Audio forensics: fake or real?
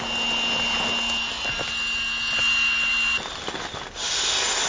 real